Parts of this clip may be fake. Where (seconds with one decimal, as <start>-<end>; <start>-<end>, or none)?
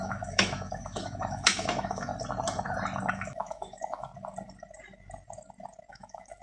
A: 0.0-2.1; 3.1-4.1; 5.9-6.4